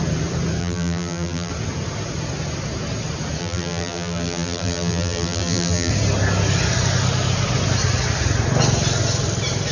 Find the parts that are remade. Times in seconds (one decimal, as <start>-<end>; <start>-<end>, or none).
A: 0.6-1.5; 3.4-5.9